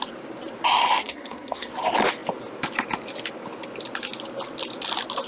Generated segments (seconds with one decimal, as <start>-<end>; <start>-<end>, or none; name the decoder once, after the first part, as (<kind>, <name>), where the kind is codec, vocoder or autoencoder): 1.0-1.7 (codec, SNAC)